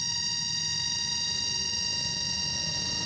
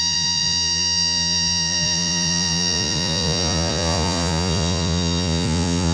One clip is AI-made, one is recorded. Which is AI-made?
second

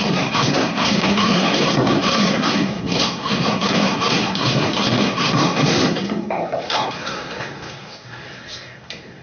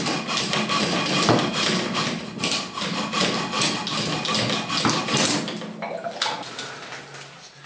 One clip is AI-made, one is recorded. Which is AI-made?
first